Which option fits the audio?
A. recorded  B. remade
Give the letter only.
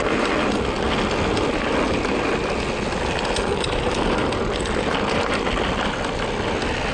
A